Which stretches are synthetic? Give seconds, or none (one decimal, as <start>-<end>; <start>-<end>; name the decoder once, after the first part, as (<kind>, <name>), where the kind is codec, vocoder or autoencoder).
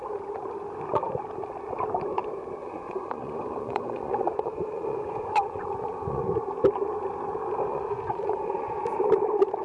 2.6-6.2 (vocoder, Vocos); 7.7-8.8